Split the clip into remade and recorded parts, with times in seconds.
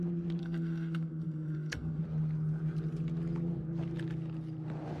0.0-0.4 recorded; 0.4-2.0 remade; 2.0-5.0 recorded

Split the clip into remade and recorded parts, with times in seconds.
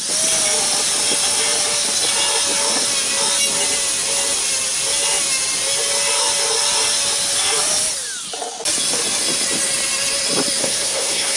0.0-10.6 recorded; 10.6-11.4 remade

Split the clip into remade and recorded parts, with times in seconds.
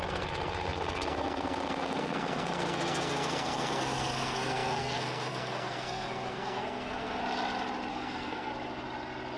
0.0-7.2 remade; 7.2-7.9 recorded; 7.9-8.5 remade; 8.5-9.4 recorded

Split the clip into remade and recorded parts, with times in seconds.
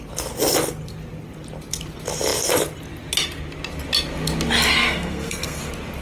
0.0-4.8 recorded; 4.8-5.6 remade; 5.6-6.0 recorded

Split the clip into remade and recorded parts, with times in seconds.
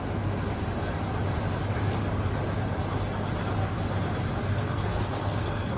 0.0-4.5 recorded; 4.5-5.8 remade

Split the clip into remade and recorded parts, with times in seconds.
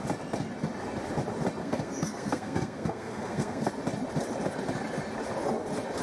0.0-1.6 recorded; 1.6-3.7 remade; 3.7-6.0 recorded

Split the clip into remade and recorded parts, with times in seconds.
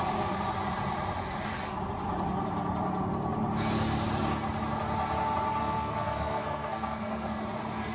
0.0-5.6 recorded; 5.6-7.4 remade; 7.4-7.9 recorded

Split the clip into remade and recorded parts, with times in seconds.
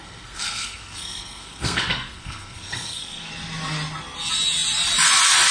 0.0-3.3 remade; 3.3-5.5 recorded